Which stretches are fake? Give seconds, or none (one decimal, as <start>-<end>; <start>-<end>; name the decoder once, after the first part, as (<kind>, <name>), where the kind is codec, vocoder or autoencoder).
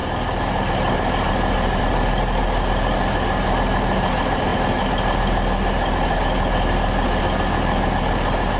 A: none